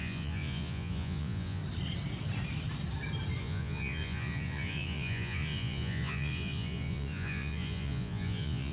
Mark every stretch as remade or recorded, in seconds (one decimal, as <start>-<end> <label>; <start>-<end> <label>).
0.0-1.6 remade; 1.6-3.4 recorded; 3.4-8.7 remade